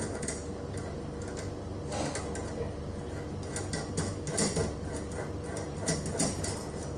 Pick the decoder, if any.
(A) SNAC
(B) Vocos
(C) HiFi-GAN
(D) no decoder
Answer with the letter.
D